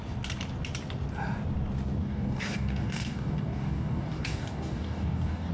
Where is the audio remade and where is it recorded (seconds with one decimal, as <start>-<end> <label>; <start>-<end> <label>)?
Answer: 0.0-2.0 recorded; 2.0-5.5 remade